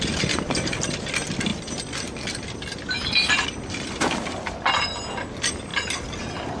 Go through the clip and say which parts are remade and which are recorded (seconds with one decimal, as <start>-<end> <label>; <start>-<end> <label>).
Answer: 0.0-6.6 recorded